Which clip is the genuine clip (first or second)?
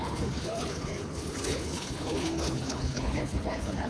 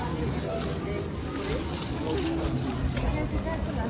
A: second